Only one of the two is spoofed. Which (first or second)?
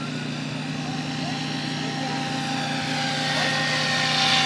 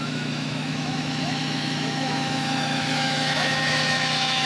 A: second